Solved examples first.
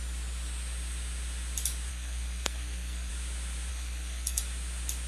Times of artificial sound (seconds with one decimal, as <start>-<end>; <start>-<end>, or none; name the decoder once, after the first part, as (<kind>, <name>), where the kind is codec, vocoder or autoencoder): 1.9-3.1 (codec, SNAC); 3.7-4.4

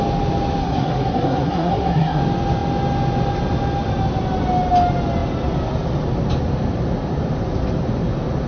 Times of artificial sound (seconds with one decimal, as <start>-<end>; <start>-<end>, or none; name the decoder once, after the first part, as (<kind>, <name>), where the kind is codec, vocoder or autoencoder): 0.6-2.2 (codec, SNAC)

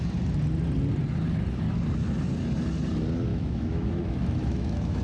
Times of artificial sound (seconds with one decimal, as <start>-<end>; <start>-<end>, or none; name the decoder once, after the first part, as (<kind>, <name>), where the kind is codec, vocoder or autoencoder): 3.3-5.0 (autoencoder, DAC-VAE)

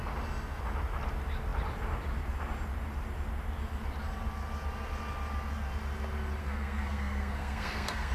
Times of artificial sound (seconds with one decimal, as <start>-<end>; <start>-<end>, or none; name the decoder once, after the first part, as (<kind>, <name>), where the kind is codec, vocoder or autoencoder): 6.4-8.1 (codec, SNAC)

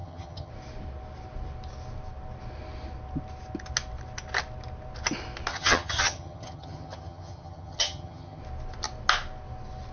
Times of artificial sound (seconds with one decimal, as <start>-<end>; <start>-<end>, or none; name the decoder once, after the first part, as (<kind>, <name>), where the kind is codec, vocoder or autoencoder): 0.0-0.5 (vocoder, HiFi-GAN); 5.5-8.4

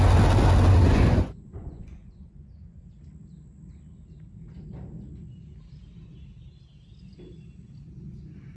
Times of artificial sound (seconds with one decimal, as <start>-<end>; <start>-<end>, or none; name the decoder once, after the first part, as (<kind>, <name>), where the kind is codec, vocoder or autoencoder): 0.9-3.0 (vocoder, Vocos)

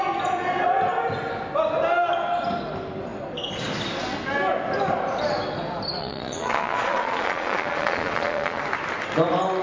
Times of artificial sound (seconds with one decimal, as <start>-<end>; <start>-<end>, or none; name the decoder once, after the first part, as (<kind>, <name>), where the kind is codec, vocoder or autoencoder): 6.0-8.6 (vocoder, Vocos)